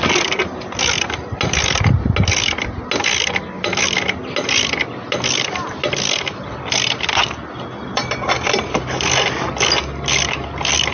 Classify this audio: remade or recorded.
recorded